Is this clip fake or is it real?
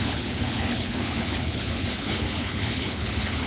fake